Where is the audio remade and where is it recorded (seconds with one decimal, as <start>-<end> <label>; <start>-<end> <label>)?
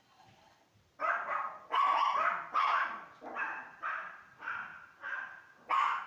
0.0-3.4 recorded; 3.4-4.2 remade; 4.2-6.1 recorded